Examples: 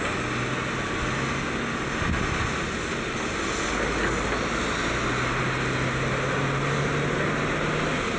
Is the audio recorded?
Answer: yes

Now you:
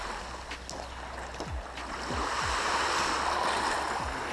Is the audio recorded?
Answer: yes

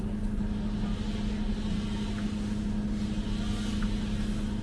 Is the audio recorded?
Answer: yes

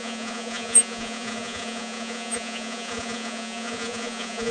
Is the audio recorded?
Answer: no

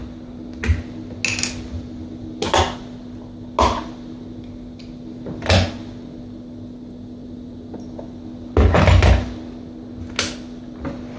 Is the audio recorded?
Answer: yes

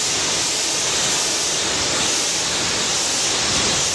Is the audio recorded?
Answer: yes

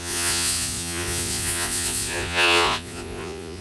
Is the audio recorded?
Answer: no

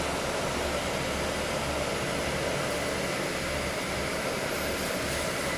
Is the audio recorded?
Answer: yes